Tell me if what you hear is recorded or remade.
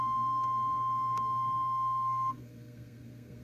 remade